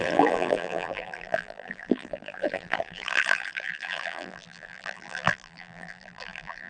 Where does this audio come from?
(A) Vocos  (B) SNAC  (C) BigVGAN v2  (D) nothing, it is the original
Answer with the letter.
C